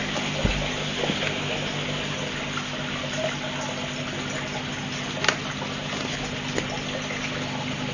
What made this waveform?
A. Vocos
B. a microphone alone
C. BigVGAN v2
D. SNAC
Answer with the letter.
B